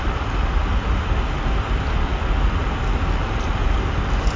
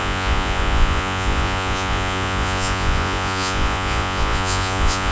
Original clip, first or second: first